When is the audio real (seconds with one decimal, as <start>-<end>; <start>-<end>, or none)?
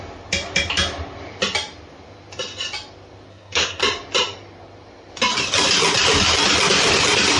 0.0-3.3; 3.8-7.4